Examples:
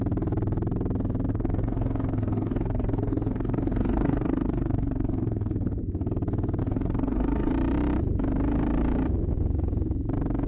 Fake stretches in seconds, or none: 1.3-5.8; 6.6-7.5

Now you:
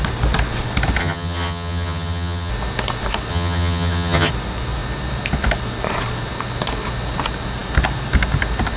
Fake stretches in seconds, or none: 1.0-2.5; 3.3-4.3